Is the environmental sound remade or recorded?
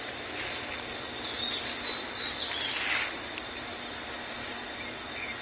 recorded